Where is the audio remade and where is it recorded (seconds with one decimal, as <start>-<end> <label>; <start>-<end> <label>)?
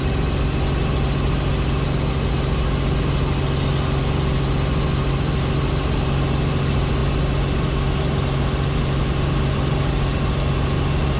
0.0-11.2 recorded